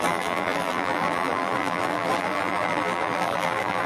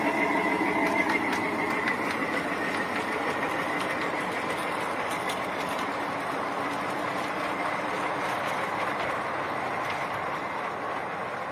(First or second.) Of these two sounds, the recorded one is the second